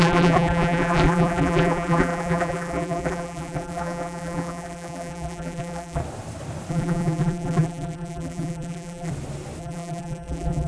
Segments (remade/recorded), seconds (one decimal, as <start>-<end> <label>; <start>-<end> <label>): 0.0-6.0 remade; 6.0-6.7 recorded; 6.7-9.1 remade; 9.1-9.6 recorded; 9.6-10.7 remade